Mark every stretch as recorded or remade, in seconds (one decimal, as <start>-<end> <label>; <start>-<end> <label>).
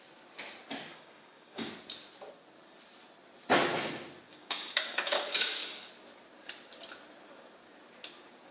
0.0-0.9 recorded; 0.9-1.7 remade; 1.7-4.3 recorded; 4.3-5.9 remade; 5.9-8.5 recorded